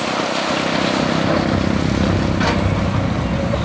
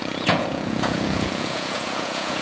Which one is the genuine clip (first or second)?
first